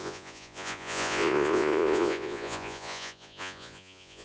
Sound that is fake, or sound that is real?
fake